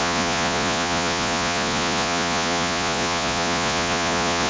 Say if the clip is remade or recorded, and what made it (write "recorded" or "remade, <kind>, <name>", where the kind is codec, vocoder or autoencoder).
remade, vocoder, Vocos